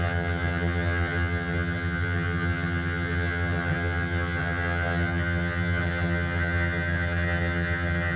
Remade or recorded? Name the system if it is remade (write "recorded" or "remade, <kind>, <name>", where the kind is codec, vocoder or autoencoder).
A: remade, vocoder, HiFi-GAN